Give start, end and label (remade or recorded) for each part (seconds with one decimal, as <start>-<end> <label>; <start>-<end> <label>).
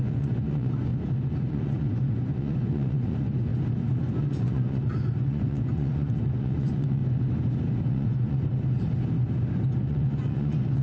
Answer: 0.0-0.9 remade; 0.9-1.5 recorded; 1.5-3.5 remade; 3.5-4.2 recorded; 4.2-7.0 remade; 7.0-7.8 recorded; 7.8-8.5 remade; 8.5-9.8 recorded; 9.8-10.8 remade